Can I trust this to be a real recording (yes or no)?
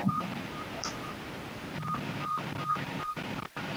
no